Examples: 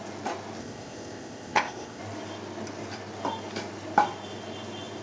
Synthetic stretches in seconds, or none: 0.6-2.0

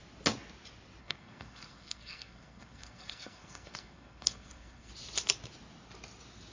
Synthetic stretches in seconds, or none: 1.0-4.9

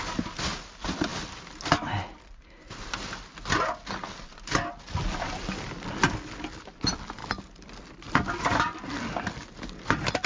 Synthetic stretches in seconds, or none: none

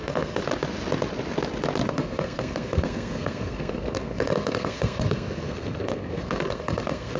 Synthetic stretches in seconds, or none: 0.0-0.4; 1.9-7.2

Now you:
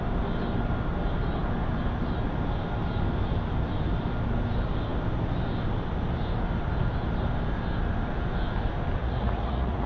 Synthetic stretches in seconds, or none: 9.0-9.9

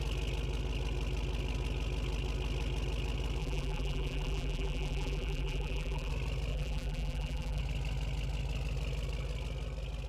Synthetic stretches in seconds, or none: 3.4-6.1; 6.5-7.6

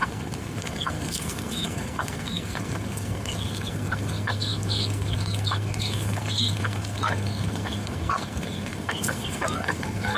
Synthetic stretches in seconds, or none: 0.0-10.2

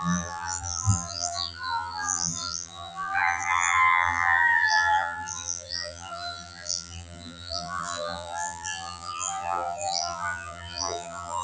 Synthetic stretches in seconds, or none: 0.0-11.4